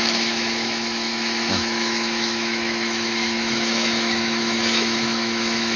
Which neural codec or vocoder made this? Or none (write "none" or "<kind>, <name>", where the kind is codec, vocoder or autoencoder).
autoencoder, DAC-VAE